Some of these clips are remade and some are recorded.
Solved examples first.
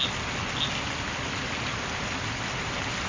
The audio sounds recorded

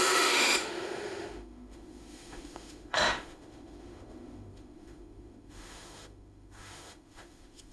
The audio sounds remade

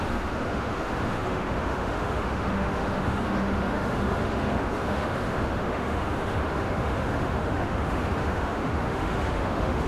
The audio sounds remade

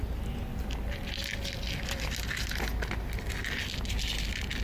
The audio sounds recorded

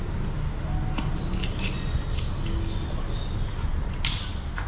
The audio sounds recorded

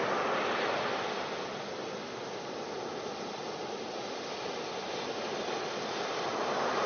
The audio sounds recorded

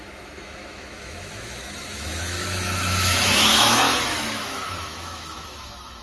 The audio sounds remade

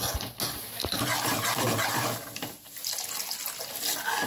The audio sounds recorded